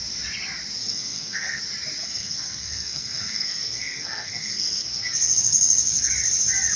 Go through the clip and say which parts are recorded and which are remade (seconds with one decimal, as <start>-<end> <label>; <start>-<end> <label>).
0.0-0.8 recorded; 0.8-1.6 remade; 1.6-2.0 recorded; 2.0-6.1 remade; 6.1-6.8 recorded